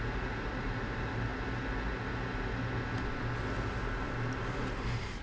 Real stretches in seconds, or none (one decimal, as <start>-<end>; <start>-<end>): 1.3-4.4